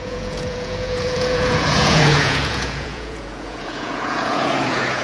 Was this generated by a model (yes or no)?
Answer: yes